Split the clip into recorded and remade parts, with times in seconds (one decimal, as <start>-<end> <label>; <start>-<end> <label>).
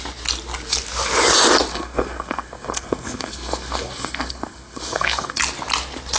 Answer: 0.0-1.7 recorded; 1.7-5.4 remade; 5.4-6.2 recorded